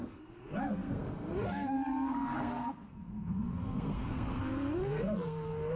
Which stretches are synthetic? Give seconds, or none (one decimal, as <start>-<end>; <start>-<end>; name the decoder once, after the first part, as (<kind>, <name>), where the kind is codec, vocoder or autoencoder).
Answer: 0.0-5.8 (codec, SNAC)